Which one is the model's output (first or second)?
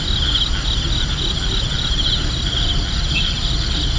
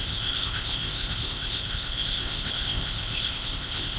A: second